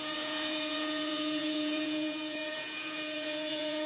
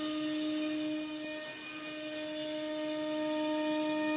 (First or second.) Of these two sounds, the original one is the second